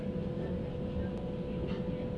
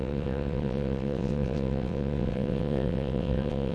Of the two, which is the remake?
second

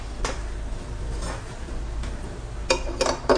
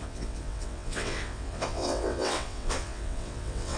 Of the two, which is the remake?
second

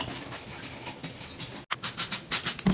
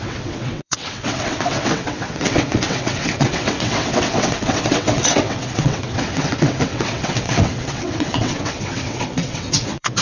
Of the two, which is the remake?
second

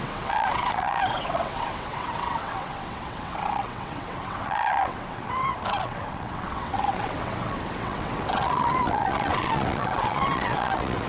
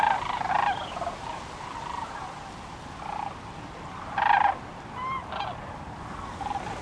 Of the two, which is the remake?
first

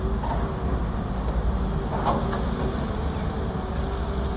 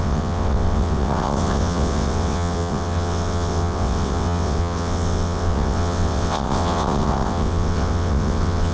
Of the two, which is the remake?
second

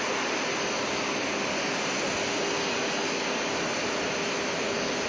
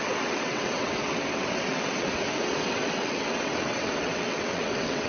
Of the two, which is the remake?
second